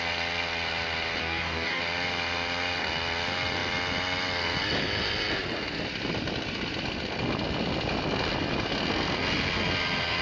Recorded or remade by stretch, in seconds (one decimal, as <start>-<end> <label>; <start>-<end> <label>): 0.0-1.2 recorded; 1.2-1.8 remade; 1.8-10.2 recorded